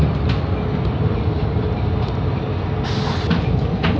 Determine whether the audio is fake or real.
real